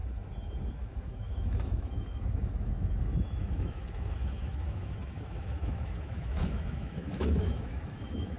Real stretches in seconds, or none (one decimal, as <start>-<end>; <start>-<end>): 0.0-0.7